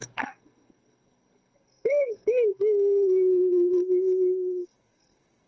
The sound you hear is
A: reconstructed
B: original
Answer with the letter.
A